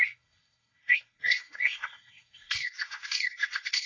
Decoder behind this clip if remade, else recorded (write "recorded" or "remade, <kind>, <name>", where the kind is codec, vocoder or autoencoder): remade, codec, SNAC